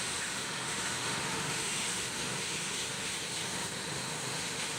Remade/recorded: remade